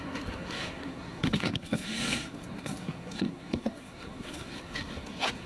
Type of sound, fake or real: fake